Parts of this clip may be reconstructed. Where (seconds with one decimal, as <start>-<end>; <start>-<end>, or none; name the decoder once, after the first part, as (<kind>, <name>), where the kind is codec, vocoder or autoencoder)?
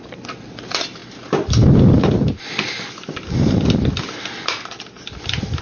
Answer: none